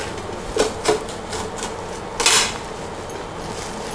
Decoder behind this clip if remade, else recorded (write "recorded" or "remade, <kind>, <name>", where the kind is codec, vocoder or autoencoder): recorded